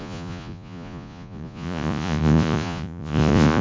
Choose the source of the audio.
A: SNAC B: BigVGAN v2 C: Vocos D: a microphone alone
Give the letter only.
C